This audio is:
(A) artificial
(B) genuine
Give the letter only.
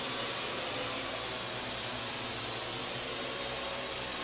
B